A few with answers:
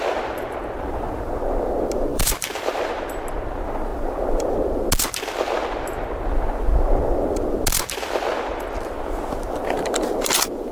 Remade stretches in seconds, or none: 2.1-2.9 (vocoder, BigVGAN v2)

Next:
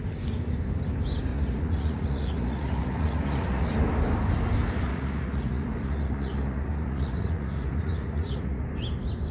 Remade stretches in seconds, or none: 1.3-3.7 (vocoder, Vocos); 4.9-8.6

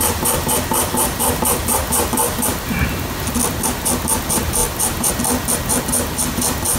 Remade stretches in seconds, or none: 0.7-2.4 (vocoder, BigVGAN v2); 4.6-5.1

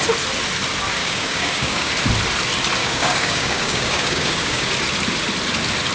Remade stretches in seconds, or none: 1.0-1.9 (codec, DAC); 2.8-4.7